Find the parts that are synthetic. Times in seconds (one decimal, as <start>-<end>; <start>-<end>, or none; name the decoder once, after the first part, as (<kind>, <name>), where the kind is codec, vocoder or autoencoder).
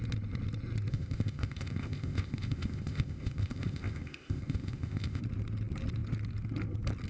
0.9-5.2 (codec, ZipCodec)